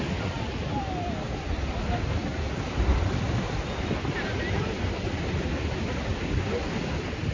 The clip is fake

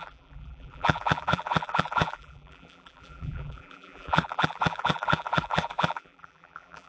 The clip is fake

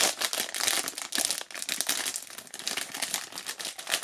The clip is real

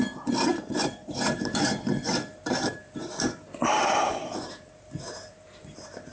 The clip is fake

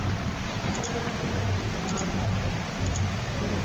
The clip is fake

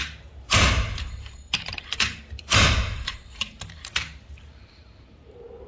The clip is fake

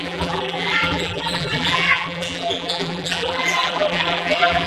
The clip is fake